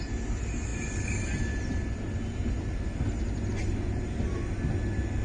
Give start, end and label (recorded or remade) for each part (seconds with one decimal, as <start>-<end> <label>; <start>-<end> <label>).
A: 0.0-5.2 recorded